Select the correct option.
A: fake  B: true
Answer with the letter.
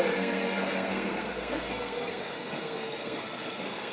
A